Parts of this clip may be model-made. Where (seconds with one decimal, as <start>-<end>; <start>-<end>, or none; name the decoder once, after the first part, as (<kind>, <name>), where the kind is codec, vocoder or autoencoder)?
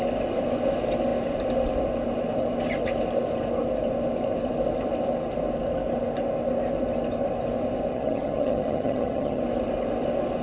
7.9-9.4 (vocoder, HiFi-GAN)